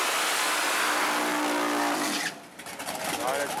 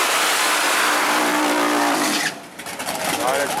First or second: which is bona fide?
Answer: first